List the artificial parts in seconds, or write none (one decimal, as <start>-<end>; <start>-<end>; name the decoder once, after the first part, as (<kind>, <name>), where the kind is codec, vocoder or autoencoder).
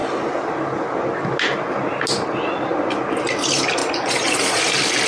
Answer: 3.8-4.6 (vocoder, Vocos)